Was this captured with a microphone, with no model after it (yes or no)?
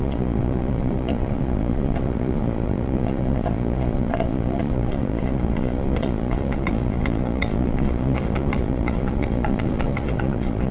no